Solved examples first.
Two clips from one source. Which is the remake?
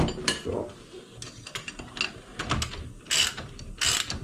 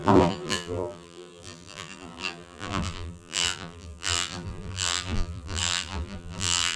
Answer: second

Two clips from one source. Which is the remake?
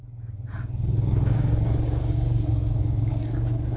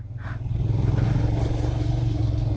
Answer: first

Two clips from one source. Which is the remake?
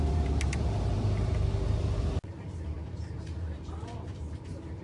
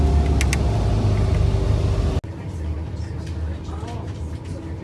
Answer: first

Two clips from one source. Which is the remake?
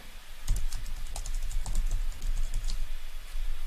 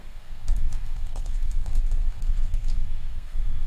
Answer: second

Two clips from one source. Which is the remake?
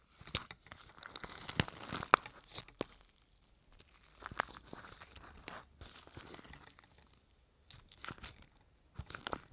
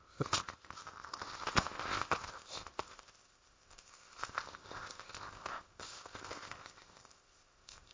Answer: second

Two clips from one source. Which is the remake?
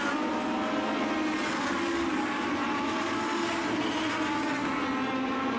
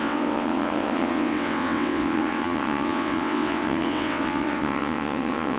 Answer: second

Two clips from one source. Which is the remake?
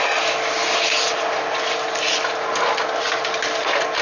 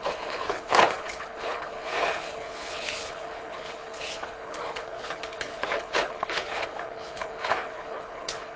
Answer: second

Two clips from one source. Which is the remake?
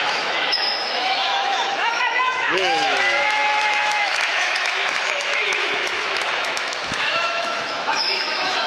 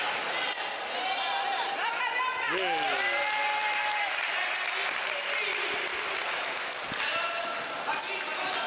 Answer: first